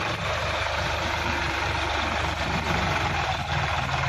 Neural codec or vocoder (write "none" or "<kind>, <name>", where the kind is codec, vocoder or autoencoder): vocoder, BigVGAN v2